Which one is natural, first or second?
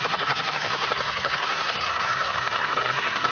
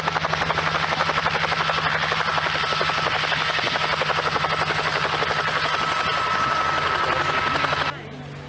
second